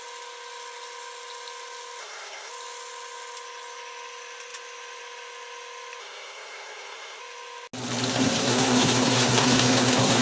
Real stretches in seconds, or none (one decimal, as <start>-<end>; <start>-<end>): 0.0-2.0; 2.5-6.0; 7.2-8.1